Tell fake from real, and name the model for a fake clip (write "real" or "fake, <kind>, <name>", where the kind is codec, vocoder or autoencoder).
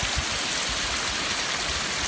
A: real